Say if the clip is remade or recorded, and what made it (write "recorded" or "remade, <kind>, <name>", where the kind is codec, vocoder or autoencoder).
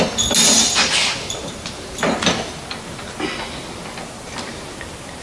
recorded